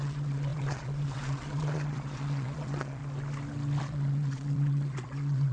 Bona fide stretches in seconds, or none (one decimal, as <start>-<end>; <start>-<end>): 3.0-3.8